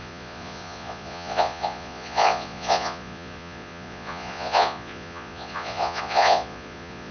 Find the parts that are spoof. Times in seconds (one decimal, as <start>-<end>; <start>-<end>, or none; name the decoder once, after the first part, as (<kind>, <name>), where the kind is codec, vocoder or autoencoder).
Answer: 0.0-7.1 (vocoder, Vocos)